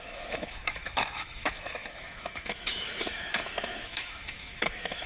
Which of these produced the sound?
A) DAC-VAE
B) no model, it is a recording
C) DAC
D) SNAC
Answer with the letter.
A